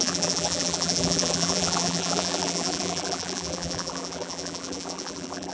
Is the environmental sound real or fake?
fake